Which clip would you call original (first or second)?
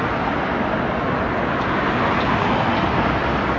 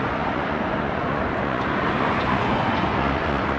first